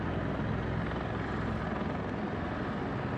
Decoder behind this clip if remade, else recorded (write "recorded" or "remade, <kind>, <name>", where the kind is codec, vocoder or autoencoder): recorded